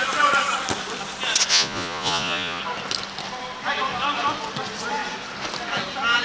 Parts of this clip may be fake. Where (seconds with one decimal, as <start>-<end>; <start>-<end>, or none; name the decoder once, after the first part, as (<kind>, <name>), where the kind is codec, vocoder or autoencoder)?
1.5-2.6 (vocoder, Vocos)